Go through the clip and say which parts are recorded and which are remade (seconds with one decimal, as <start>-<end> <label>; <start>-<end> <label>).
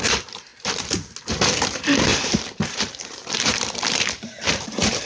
0.0-0.5 remade; 0.5-1.2 recorded; 1.2-5.1 remade